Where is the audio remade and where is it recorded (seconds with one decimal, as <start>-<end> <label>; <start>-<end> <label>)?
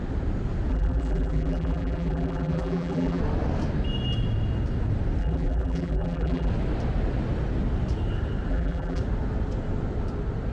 0.0-0.7 recorded; 0.7-3.2 remade; 3.2-5.2 recorded; 5.2-6.5 remade; 6.5-8.5 recorded; 8.5-9.0 remade; 9.0-10.5 recorded